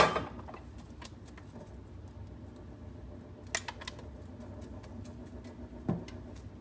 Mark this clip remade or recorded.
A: recorded